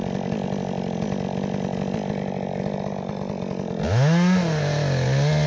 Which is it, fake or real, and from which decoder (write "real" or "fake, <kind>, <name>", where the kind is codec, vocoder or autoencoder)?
real